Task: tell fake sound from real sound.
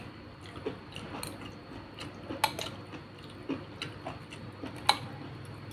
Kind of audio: real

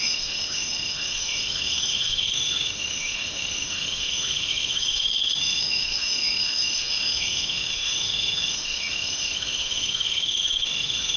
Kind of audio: fake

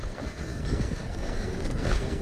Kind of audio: fake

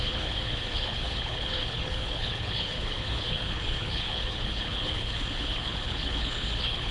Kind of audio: fake